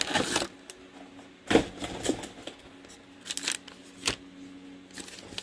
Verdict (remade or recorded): recorded